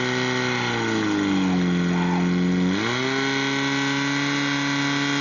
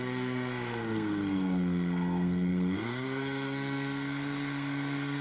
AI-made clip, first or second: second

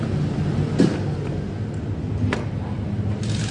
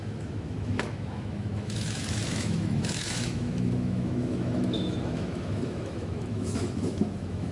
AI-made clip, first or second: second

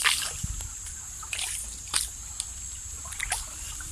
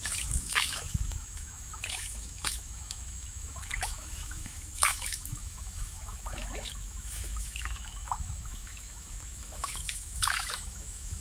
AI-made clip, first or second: second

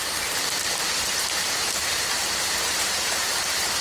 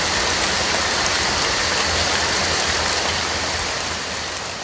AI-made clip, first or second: first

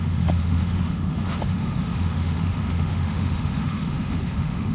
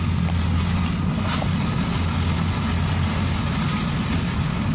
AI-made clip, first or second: first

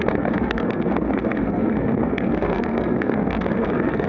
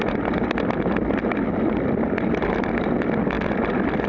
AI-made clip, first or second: first